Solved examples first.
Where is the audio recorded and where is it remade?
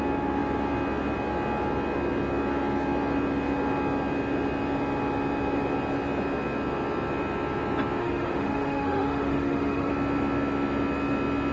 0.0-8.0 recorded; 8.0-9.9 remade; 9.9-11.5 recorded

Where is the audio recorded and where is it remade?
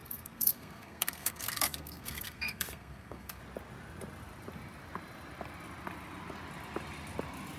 0.0-3.4 remade; 3.4-7.6 recorded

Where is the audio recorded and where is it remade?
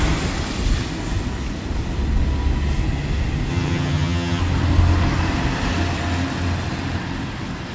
0.0-3.5 recorded; 3.5-4.4 remade; 4.4-7.7 recorded